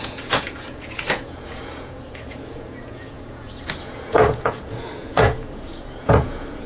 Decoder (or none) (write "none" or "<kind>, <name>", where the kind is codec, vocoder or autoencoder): vocoder, Vocos